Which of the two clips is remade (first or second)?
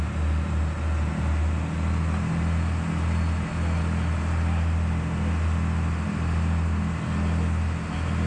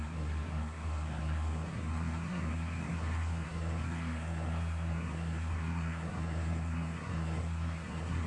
second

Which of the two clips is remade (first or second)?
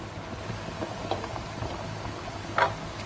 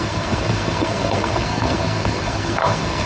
second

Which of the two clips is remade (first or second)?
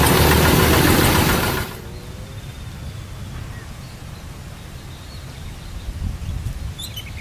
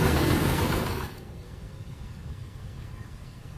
second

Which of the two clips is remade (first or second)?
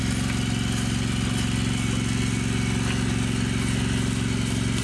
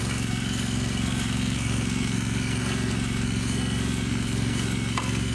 second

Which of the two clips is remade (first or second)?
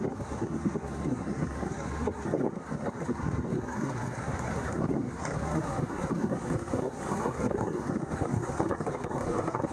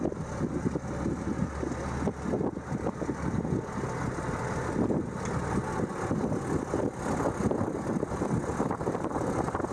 first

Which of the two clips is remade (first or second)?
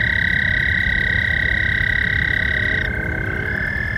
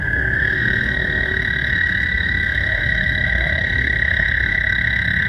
second